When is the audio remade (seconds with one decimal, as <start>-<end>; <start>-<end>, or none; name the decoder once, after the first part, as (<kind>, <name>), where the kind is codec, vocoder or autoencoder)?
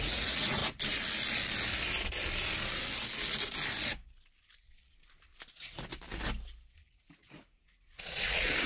0.0-0.6 (vocoder, Vocos); 5.5-5.9; 6.9-8.7